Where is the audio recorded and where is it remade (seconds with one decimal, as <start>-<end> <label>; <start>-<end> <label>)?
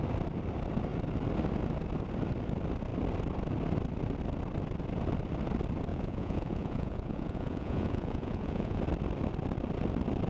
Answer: 0.0-5.9 recorded; 5.9-8.8 remade; 8.8-10.3 recorded